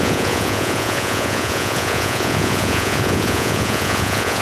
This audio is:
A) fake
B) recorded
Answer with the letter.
A